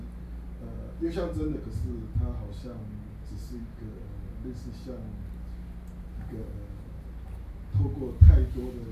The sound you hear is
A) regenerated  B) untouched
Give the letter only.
B